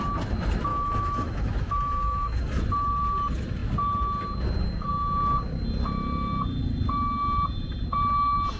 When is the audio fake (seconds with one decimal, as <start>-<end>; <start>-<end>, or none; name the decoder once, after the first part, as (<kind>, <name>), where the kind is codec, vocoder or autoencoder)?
0.7-2.6 (autoencoder, DAC-VAE)